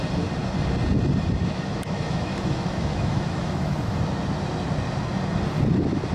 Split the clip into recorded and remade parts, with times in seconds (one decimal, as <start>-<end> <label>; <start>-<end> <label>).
0.0-1.4 recorded; 1.4-4.0 remade; 4.0-6.1 recorded